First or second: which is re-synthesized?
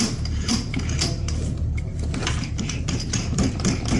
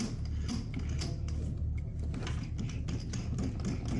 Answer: first